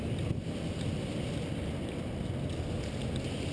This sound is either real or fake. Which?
real